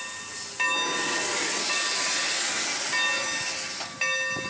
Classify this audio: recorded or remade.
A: recorded